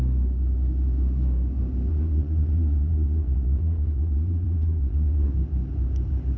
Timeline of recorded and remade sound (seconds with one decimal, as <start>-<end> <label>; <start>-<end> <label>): 0.0-1.9 recorded; 1.9-5.3 remade; 5.3-6.4 recorded